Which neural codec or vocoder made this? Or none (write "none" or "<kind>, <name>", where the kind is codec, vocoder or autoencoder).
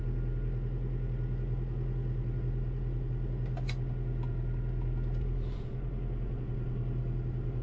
none